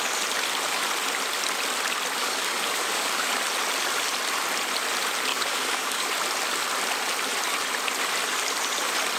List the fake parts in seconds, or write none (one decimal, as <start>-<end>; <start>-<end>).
2.2-3.3; 5.3-6.1